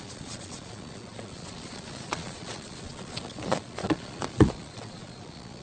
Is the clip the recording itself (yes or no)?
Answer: no